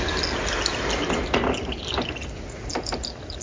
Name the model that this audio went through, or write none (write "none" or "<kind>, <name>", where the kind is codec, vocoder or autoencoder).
none